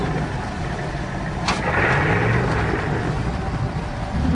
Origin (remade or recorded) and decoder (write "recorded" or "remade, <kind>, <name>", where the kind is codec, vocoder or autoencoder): recorded